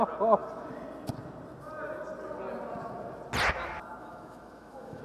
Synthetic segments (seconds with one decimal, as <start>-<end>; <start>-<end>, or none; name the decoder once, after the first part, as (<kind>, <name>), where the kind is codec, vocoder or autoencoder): 4.0-5.0 (autoencoder, DAC-VAE)